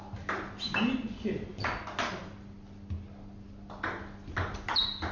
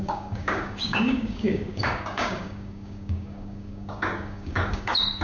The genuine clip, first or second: first